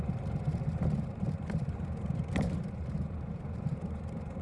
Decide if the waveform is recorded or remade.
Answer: remade